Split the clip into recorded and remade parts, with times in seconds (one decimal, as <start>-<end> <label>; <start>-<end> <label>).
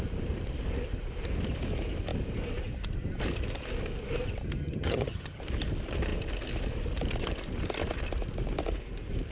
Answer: 0.0-4.6 recorded; 4.6-5.4 remade; 5.4-9.3 recorded